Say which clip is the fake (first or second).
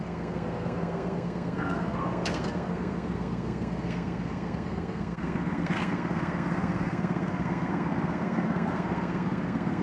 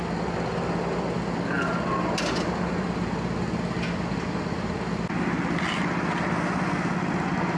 first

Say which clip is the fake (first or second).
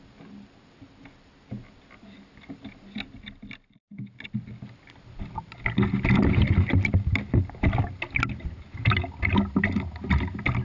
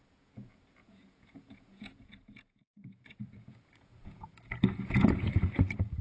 second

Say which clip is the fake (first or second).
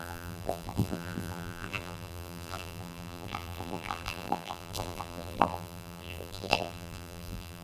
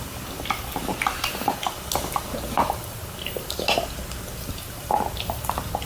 first